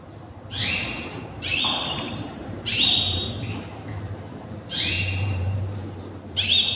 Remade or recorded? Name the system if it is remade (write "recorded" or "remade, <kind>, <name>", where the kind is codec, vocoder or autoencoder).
remade, vocoder, BigVGAN v2